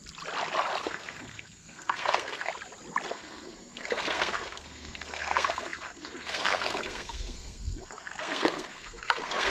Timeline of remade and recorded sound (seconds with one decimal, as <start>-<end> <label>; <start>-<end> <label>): 0.0-0.8 recorded; 0.8-2.5 remade; 2.5-3.1 recorded; 3.1-9.5 remade